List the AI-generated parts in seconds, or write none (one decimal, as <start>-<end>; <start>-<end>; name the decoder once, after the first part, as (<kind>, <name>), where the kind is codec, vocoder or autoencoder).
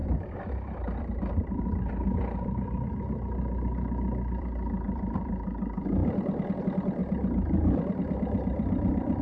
0.0-6.0 (vocoder, BigVGAN v2); 6.6-9.2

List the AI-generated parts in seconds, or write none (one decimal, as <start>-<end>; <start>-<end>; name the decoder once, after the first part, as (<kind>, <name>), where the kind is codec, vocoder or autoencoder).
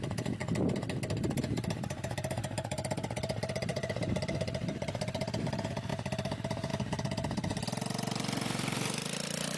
0.0-0.4 (vocoder, BigVGAN v2); 1.4-7.5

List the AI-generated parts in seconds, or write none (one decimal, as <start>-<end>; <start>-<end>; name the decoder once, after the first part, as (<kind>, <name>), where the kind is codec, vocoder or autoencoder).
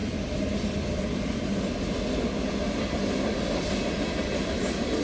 none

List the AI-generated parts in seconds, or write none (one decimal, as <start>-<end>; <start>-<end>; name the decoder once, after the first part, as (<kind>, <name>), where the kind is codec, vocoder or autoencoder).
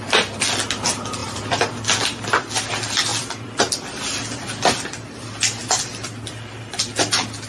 1.2-1.8 (vocoder, BigVGAN v2); 3.1-6.6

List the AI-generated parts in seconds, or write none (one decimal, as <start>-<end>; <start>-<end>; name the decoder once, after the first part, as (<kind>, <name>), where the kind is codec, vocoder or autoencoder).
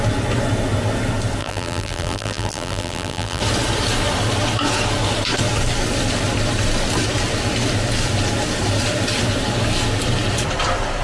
1.4-3.4 (vocoder, BigVGAN v2)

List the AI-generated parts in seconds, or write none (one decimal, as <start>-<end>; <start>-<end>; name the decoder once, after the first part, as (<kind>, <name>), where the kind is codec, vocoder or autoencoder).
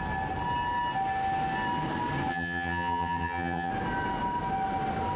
2.3-3.7 (vocoder, HiFi-GAN)